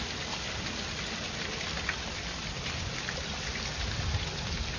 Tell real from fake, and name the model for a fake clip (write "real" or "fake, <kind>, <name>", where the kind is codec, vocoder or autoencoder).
real